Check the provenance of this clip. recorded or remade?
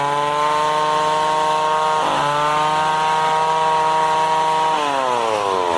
recorded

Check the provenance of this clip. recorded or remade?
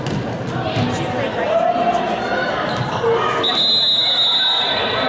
recorded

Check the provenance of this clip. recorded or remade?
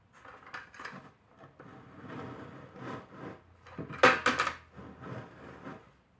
recorded